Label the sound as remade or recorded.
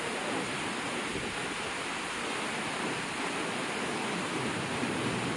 recorded